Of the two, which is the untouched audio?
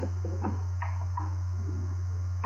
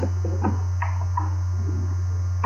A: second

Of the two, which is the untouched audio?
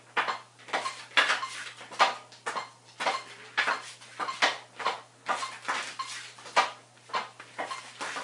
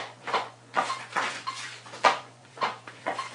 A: first